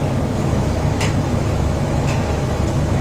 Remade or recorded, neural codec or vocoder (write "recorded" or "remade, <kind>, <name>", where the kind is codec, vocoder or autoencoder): remade, autoencoder, DAC-VAE